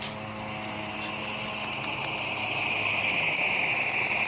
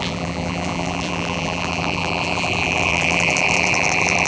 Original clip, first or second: first